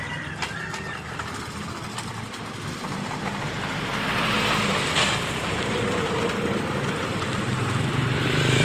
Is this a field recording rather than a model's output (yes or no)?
yes